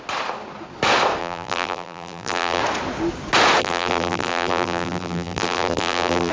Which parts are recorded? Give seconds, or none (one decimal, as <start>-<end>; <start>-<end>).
0.0-1.2; 2.6-3.6